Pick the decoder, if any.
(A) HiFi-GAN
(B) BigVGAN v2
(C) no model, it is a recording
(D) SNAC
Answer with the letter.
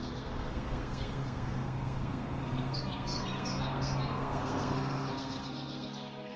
D